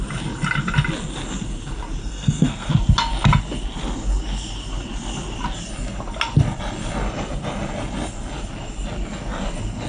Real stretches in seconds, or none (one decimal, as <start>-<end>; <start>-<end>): 0.0-2.0; 2.7-9.9